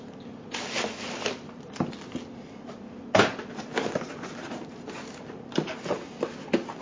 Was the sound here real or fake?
real